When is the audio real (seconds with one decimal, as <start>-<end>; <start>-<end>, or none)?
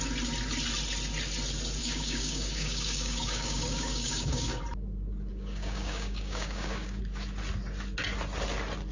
0.0-1.8; 4.6-5.3; 7.0-8.9